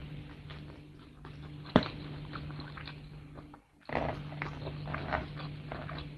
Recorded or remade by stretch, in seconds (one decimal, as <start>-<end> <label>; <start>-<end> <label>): 0.0-5.0 remade; 5.0-6.2 recorded